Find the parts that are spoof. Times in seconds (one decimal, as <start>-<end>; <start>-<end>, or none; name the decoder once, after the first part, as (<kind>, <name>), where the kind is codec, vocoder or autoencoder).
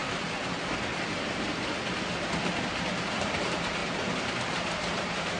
3.1-3.8 (vocoder, BigVGAN v2); 4.3-5.4